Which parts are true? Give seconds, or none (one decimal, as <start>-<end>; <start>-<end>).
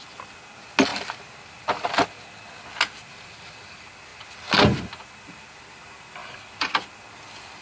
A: 0.0-6.2; 6.9-7.6